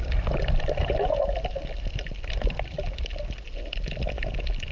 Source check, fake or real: real